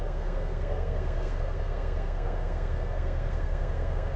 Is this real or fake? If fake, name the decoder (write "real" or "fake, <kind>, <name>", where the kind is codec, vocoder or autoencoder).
fake, codec, SNAC